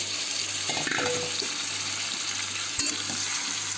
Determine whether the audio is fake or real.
real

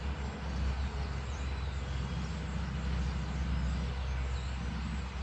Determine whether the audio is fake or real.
real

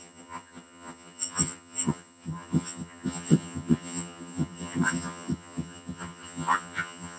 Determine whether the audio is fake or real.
fake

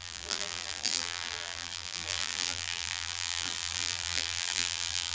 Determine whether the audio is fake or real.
fake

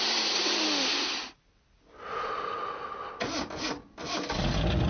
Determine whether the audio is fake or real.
real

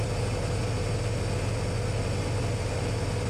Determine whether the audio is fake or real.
real